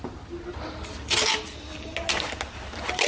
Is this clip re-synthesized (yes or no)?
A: no